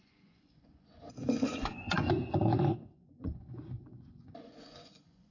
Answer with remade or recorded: remade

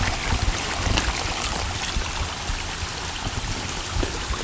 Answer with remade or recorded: recorded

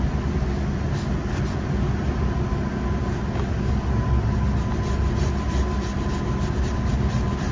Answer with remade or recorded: remade